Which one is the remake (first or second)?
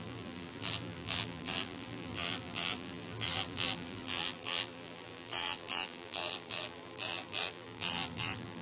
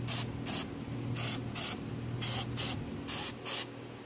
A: first